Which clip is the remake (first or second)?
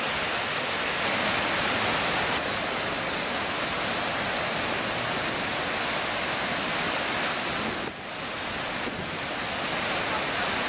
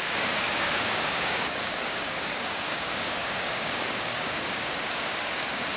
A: second